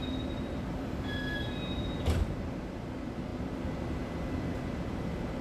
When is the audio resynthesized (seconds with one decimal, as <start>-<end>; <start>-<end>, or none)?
0.0-5.4